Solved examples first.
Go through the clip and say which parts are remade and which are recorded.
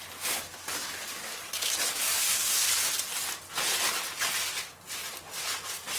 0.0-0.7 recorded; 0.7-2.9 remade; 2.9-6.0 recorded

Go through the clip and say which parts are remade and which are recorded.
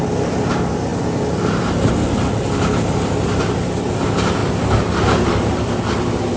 0.0-6.4 recorded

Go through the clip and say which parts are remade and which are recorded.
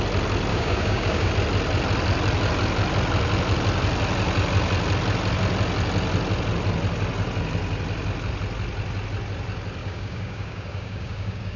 0.0-0.5 recorded; 0.5-1.3 remade; 1.3-9.8 recorded; 9.8-11.6 remade